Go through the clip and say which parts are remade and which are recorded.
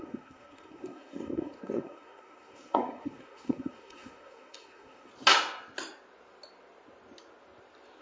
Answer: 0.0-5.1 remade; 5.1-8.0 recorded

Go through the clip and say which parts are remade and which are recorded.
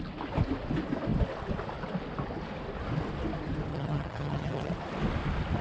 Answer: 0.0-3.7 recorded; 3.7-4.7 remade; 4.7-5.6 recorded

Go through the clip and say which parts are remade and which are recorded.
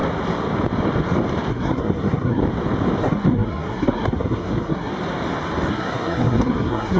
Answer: 0.0-1.5 recorded; 1.5-2.4 remade; 2.4-3.0 recorded; 3.0-4.9 remade; 4.9-5.7 recorded; 5.7-7.0 remade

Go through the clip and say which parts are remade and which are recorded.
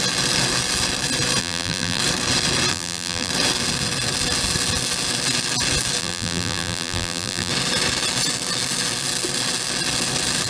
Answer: 0.0-1.4 recorded; 1.4-2.0 remade; 2.0-2.7 recorded; 2.7-3.3 remade; 3.3-6.0 recorded; 6.0-7.5 remade; 7.5-10.5 recorded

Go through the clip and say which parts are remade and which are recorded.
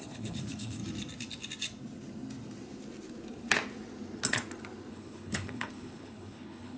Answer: 0.0-0.8 remade; 0.8-4.9 recorded; 4.9-6.8 remade